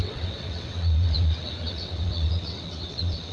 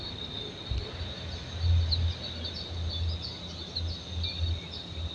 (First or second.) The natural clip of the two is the second